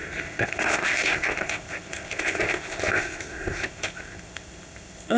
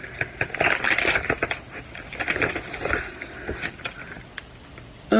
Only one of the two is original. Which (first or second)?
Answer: second